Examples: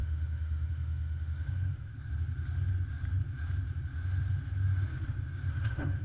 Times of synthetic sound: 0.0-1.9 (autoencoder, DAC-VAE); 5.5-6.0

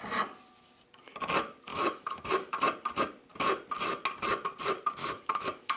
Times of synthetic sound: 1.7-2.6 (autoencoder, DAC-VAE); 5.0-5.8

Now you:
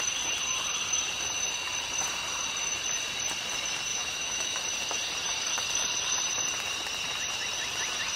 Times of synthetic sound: 3.9-4.6 (autoencoder, DAC-VAE)

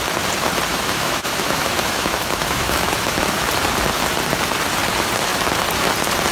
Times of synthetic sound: 0.7-3.5 (autoencoder, DAC-VAE)

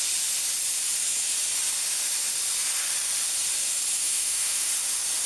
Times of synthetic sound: 4.0-4.7 (autoencoder, DAC-VAE)

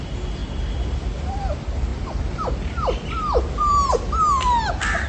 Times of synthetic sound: none